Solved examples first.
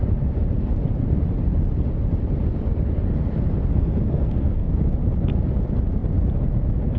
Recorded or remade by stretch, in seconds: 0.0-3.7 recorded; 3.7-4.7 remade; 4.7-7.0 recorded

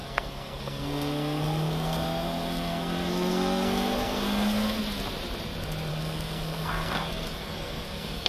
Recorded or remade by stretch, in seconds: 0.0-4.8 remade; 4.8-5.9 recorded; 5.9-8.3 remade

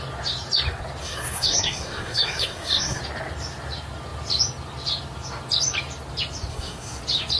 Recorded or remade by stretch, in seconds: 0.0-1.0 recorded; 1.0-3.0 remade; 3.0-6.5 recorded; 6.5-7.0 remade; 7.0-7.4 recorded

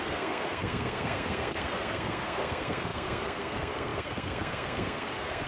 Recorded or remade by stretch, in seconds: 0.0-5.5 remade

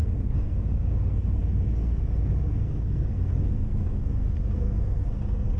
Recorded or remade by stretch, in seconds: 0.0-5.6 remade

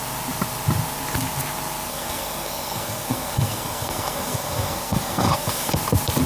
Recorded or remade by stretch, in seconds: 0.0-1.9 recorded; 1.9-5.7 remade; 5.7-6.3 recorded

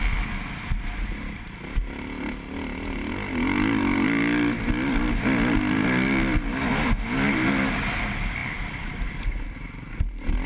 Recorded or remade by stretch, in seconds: 0.0-10.5 recorded

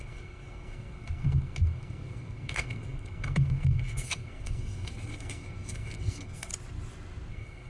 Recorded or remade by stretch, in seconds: 0.0-6.5 remade; 6.5-7.3 recorded; 7.3-7.7 remade